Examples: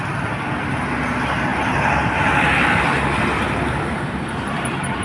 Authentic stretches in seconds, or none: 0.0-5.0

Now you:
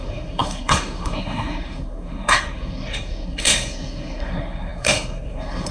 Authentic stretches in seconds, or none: none

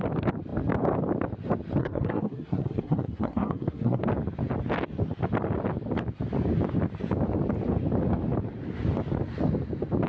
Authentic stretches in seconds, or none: 0.0-1.8; 4.0-10.1

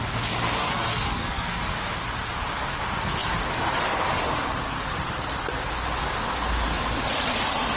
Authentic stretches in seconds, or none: 0.0-0.6; 1.6-7.8

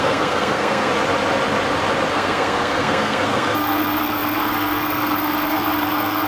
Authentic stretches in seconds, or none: 0.9-2.1